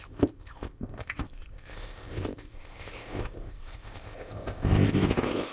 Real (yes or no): no